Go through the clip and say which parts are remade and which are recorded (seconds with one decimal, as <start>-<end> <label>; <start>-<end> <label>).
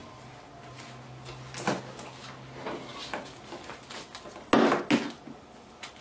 0.0-6.0 recorded